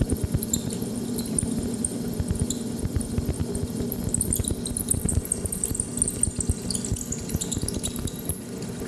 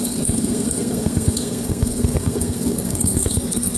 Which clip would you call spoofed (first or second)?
second